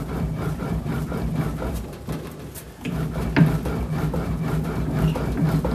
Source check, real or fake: real